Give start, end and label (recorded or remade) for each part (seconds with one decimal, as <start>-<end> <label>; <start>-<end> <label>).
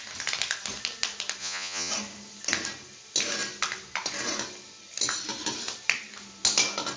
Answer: 0.0-1.4 recorded; 1.4-1.9 remade; 1.9-7.0 recorded